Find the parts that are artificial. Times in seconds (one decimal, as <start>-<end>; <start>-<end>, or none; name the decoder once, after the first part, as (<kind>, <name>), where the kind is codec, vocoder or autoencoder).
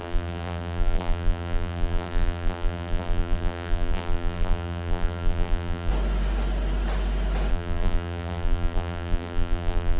0.0-5.9 (vocoder, BigVGAN v2); 7.5-10.0